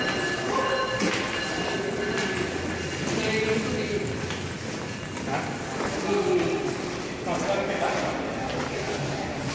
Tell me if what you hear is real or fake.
real